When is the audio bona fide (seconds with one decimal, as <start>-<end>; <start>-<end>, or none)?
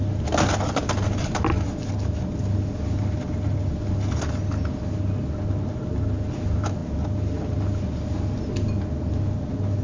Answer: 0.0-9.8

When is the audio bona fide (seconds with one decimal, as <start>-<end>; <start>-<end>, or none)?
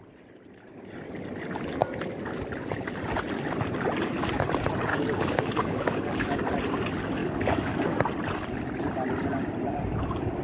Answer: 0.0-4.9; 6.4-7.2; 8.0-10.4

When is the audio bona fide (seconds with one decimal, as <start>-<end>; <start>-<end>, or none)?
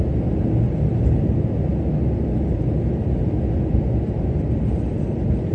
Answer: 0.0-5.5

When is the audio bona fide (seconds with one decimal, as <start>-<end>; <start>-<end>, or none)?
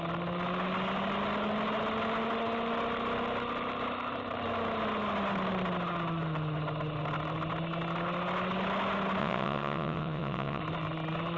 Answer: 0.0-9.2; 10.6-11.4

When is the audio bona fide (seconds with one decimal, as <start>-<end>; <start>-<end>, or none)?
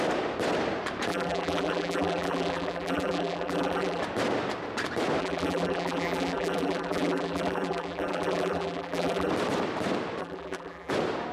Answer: 0.0-1.1; 4.0-5.2; 9.3-10.2; 10.9-11.3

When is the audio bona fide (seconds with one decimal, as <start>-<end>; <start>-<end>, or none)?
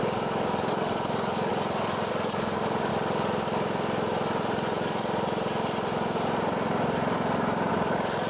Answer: 1.5-2.1; 2.9-7.7